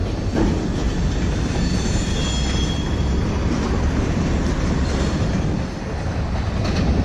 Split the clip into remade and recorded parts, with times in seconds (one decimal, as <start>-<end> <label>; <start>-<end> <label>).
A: 0.0-7.0 recorded